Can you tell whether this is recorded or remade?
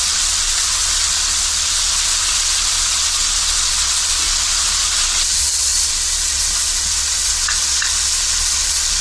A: remade